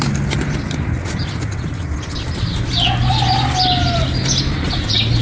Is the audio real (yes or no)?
yes